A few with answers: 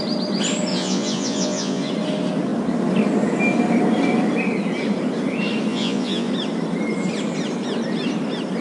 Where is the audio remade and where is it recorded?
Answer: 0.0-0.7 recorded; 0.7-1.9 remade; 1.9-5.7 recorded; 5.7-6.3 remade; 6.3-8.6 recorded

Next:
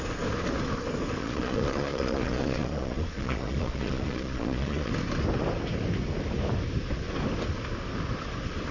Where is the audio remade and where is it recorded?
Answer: 0.0-1.2 recorded; 1.2-4.9 remade; 4.9-8.7 recorded

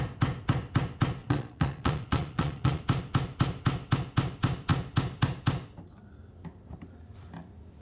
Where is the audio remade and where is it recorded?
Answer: 0.0-1.2 recorded; 1.2-2.8 remade; 2.8-7.8 recorded

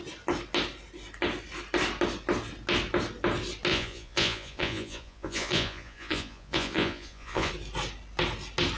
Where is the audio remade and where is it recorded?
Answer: 0.0-3.7 recorded; 3.7-7.5 remade; 7.5-8.8 recorded

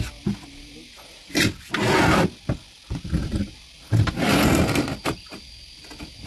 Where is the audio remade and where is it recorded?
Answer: 0.0-6.3 recorded

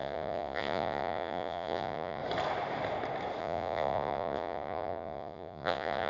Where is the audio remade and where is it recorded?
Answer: 0.0-2.2 remade; 2.2-3.4 recorded; 3.4-6.1 remade

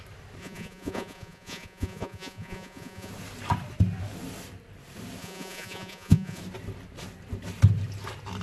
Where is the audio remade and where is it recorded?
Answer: 0.0-0.4 recorded; 0.4-3.1 remade; 3.1-5.2 recorded; 5.2-6.4 remade; 6.4-8.4 recorded

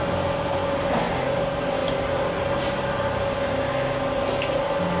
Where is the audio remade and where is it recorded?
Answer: 0.0-5.0 recorded